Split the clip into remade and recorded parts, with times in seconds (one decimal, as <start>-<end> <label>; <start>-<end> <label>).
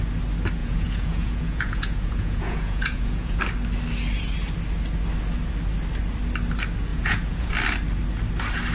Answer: 0.0-0.6 recorded; 0.6-3.4 remade; 3.4-6.9 recorded; 6.9-7.5 remade; 7.5-8.7 recorded